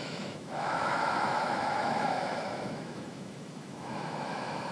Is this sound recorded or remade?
remade